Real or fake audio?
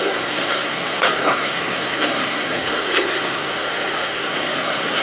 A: fake